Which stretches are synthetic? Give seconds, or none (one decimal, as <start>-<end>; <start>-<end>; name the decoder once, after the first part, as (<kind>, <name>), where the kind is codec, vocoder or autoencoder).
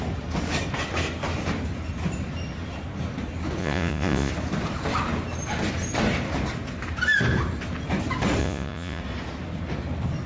3.6-4.3 (vocoder, Vocos); 8.4-9.0